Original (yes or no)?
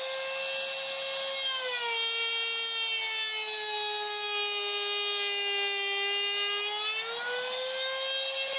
yes